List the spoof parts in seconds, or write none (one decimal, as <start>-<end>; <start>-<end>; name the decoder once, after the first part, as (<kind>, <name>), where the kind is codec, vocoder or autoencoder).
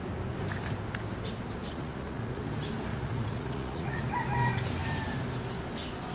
1.6-2.4 (vocoder, Vocos); 2.9-4.0